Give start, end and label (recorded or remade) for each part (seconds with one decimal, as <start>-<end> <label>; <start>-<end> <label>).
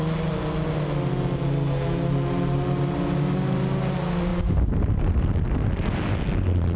0.0-6.8 recorded